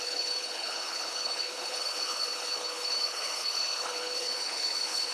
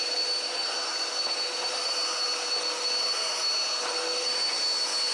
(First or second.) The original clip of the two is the second